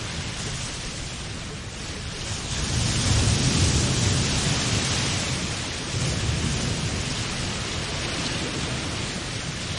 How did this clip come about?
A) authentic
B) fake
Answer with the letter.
A